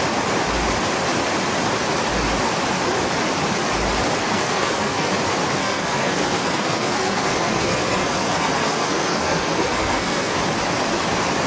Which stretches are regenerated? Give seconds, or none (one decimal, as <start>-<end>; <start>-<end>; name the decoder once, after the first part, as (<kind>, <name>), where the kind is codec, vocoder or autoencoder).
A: 4.2-5.1 (codec, SNAC); 5.6-10.4